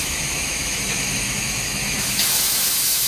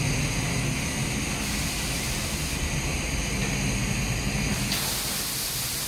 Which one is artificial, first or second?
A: first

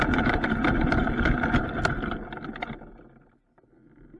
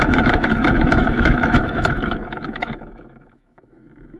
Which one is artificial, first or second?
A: second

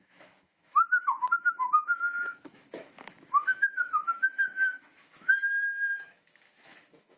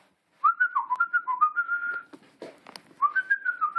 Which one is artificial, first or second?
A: first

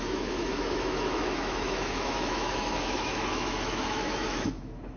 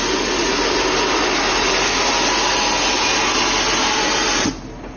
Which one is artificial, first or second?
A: first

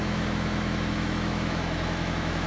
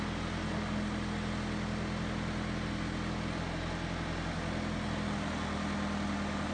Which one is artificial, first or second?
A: first